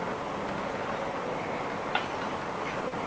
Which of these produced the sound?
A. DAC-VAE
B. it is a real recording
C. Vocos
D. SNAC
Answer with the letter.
B